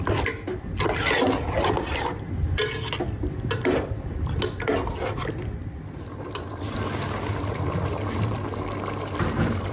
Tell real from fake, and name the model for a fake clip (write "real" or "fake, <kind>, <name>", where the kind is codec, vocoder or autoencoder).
real